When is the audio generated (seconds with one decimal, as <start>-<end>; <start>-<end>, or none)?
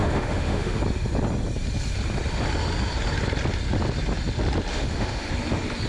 0.0-0.8; 4.7-5.3